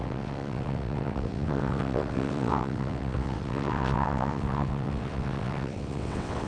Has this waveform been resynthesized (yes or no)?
yes